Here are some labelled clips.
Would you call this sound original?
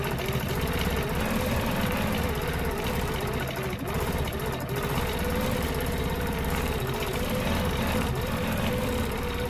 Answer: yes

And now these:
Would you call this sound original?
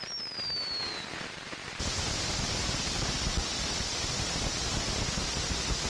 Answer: yes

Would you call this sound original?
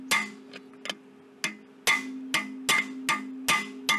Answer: yes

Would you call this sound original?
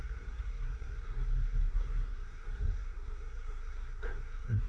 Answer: no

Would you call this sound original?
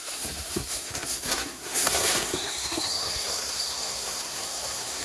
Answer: no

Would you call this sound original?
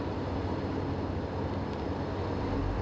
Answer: yes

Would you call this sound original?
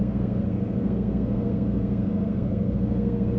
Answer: no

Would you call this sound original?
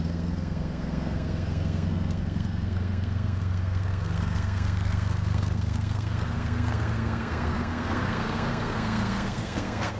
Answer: no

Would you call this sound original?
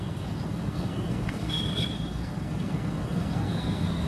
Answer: no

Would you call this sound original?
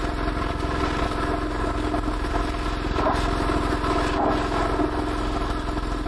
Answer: yes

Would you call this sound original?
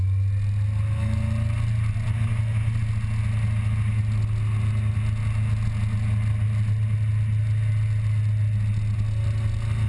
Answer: yes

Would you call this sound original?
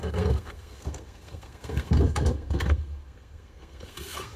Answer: no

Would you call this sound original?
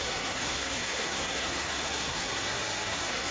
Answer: no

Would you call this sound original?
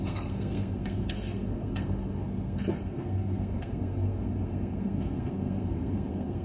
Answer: no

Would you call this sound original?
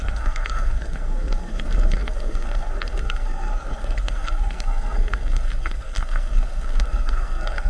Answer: no